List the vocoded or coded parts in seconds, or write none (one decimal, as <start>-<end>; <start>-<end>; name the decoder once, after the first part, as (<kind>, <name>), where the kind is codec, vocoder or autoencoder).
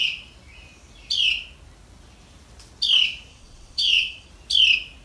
3.3-4.3 (vocoder, WaveNeXt)